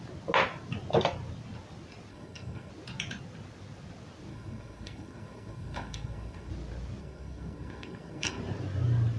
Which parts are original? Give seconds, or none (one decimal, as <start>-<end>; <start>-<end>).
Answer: 0.0-2.1; 2.7-4.3; 6.5-7.0; 8.4-9.2